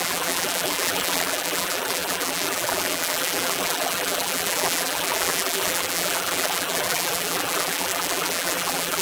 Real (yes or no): no